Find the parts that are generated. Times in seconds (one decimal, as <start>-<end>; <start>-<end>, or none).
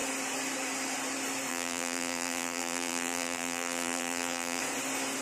1.5-4.6